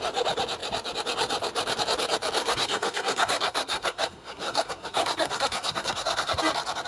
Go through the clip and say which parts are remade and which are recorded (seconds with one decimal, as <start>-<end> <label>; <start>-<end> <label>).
0.0-2.4 recorded; 2.4-6.4 remade; 6.4-6.9 recorded